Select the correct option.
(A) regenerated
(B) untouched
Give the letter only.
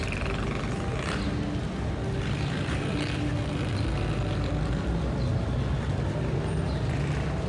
B